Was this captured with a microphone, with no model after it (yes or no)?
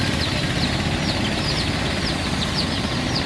yes